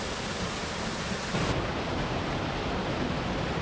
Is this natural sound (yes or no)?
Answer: yes